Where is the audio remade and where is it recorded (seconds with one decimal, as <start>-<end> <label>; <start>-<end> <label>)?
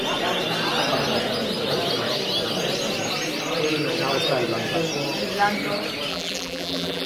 0.0-6.1 recorded; 6.1-7.1 remade